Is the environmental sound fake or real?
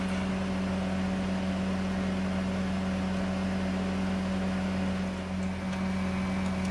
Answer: real